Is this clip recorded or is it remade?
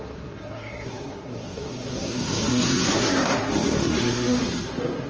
remade